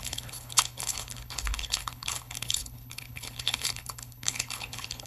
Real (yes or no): no